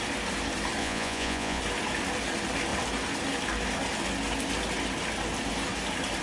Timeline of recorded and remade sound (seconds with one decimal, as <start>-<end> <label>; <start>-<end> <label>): 0.0-0.8 recorded; 0.8-1.6 remade; 1.6-6.2 recorded